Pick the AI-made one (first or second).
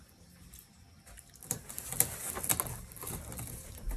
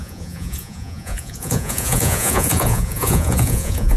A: second